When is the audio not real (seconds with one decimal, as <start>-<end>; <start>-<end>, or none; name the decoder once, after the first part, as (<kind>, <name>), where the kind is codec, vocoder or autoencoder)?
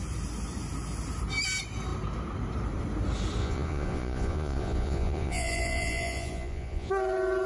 3.4-6.9 (vocoder, Vocos)